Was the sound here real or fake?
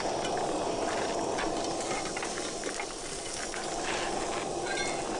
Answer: real